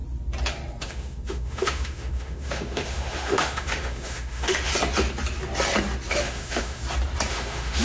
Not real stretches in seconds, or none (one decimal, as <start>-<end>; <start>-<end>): 0.8-4.7; 6.1-6.8; 7.3-7.8

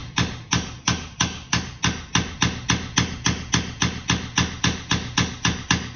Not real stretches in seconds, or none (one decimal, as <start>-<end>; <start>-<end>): none

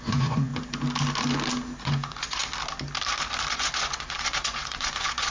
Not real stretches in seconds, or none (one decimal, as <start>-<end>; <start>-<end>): 0.0-0.5; 1.8-2.4; 3.5-5.3